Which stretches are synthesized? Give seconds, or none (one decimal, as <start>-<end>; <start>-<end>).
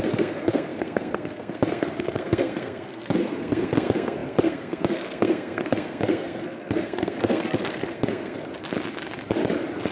0.0-8.5